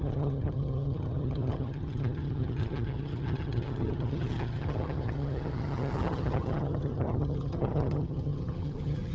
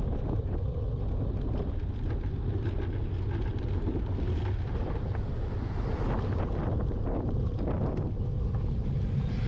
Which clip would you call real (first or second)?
second